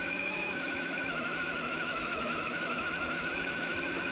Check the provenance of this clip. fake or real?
fake